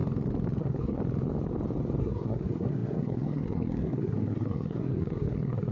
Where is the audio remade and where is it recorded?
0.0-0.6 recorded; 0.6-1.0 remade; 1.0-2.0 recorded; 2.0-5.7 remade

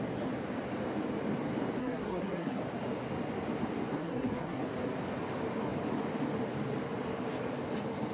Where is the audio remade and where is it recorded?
0.0-1.8 recorded; 1.8-2.6 remade; 2.6-4.0 recorded; 4.0-4.6 remade; 4.6-8.1 recorded

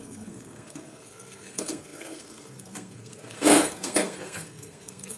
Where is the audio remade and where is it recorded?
0.0-5.2 remade

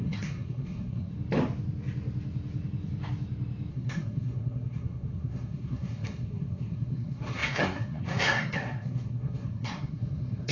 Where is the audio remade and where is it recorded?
0.0-1.1 remade; 1.1-3.7 recorded; 3.7-10.5 remade

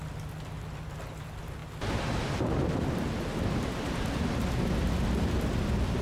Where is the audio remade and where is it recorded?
0.0-6.0 recorded

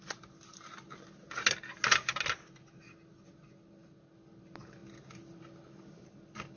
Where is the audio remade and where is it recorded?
0.0-6.6 recorded

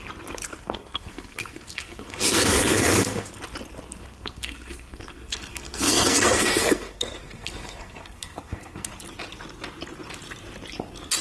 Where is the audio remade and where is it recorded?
0.0-0.5 recorded; 0.5-3.3 remade; 3.3-4.0 recorded; 4.0-8.9 remade; 8.9-11.2 recorded